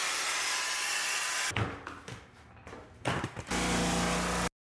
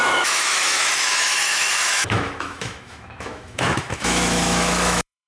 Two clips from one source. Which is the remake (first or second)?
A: second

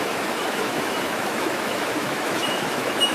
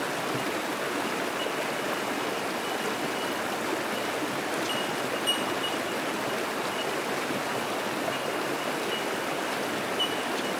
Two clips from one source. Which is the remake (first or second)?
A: first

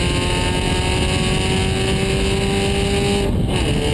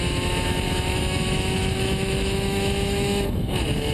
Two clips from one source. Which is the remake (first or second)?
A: second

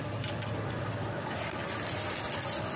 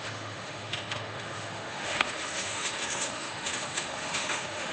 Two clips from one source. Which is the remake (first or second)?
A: second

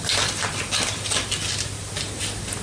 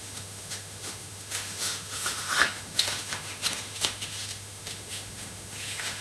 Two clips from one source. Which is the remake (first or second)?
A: second